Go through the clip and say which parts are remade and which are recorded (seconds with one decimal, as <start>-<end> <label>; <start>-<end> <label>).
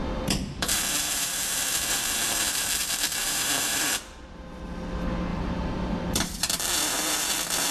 0.0-4.6 remade; 4.6-5.3 recorded; 5.3-6.8 remade; 6.8-7.7 recorded